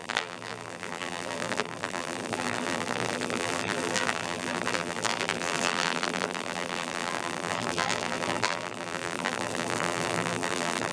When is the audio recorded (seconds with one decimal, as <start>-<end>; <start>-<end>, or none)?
none

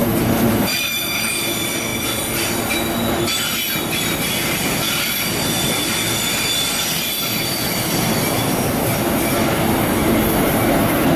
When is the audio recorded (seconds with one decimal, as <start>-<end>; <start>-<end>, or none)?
1.3-11.2

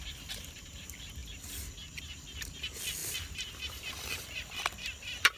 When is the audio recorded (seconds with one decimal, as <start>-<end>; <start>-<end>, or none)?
none

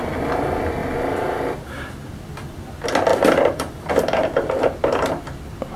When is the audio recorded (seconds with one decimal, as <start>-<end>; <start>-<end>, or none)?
0.0-3.1; 3.9-5.8

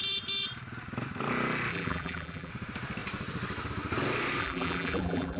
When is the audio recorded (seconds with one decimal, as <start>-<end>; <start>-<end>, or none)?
0.0-1.7; 2.5-4.4

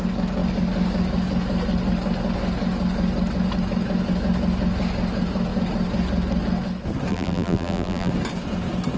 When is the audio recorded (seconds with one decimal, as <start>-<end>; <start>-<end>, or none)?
0.0-7.1; 8.1-9.0